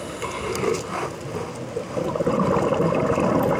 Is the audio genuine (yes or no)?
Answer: yes